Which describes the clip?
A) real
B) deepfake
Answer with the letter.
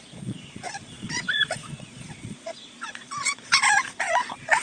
B